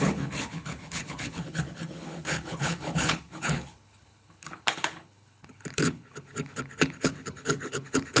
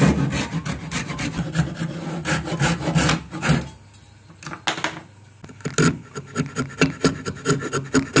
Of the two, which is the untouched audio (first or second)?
second